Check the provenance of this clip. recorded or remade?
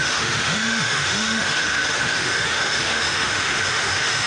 remade